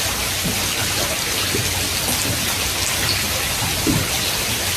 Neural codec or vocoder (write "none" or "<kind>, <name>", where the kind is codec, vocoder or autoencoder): none